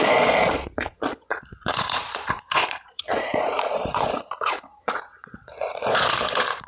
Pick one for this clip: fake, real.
fake